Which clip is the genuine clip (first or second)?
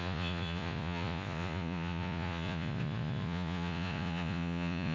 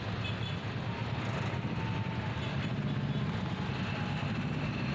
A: second